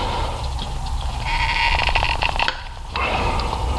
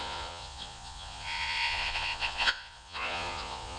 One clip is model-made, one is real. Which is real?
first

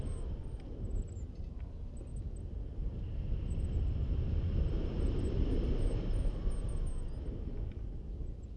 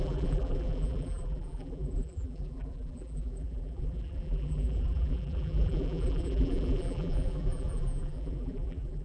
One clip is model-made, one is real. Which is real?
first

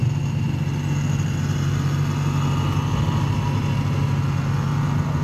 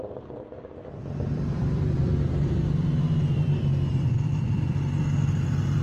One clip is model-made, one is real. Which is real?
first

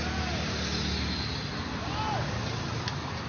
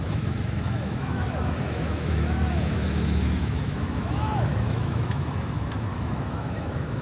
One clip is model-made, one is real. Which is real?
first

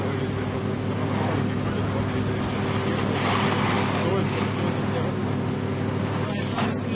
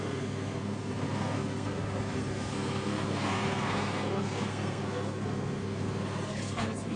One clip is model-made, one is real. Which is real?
first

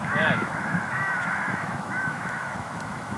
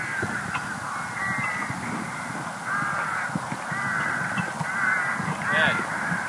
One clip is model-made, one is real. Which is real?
second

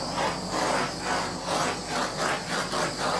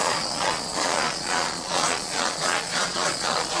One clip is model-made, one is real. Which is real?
first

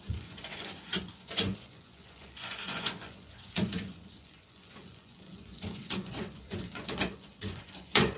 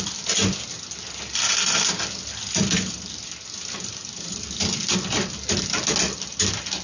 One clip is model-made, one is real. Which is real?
second